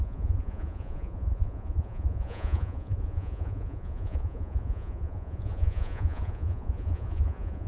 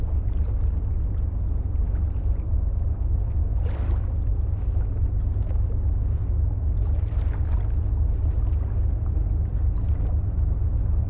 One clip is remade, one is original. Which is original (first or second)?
second